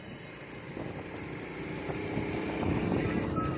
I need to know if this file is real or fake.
real